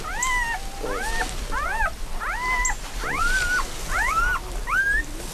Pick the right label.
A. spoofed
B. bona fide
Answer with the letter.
B